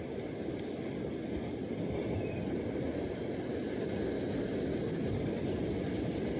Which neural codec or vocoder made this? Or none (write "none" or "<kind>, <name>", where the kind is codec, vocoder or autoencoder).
none